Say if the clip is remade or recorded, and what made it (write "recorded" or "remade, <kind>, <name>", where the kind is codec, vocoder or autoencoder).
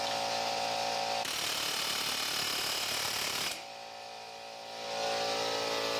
recorded